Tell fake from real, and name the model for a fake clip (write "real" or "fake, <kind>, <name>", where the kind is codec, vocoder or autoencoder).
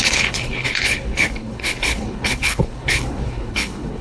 fake, codec, HILCodec